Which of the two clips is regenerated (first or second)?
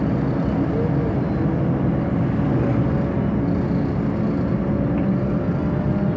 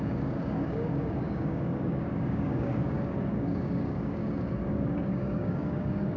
second